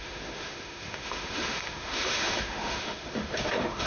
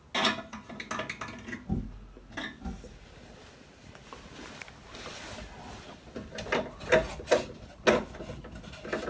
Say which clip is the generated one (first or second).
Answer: first